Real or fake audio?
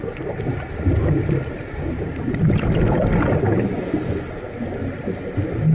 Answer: real